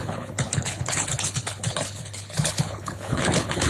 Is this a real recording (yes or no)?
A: no